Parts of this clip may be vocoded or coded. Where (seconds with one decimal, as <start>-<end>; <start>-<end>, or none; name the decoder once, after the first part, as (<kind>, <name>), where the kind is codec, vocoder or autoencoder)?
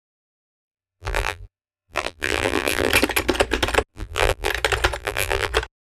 0.6-2.9 (vocoder, BigVGAN v2); 3.9-4.5; 5.0-5.5